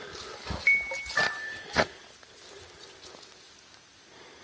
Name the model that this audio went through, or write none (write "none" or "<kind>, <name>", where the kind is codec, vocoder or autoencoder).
none